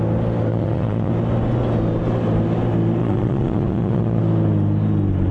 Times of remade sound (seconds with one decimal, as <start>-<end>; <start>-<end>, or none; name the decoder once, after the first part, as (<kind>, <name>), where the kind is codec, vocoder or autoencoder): 0.5-1.1 (vocoder, Vocos); 3.0-4.2